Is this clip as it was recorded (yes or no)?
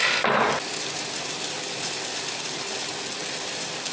yes